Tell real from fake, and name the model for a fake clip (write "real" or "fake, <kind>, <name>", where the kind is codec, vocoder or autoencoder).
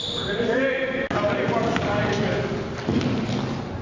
real